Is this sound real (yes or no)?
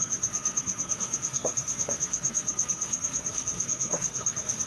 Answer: no